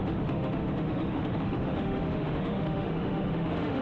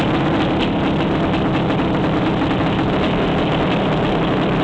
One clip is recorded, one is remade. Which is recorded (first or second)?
second